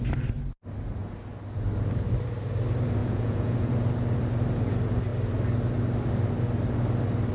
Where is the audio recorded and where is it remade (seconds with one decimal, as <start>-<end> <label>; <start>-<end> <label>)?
0.0-3.0 recorded; 3.0-3.7 remade; 3.7-7.3 recorded